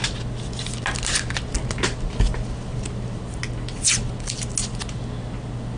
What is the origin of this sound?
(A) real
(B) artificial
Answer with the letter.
A